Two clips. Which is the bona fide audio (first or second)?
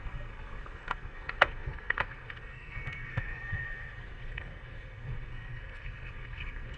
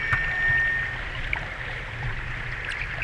second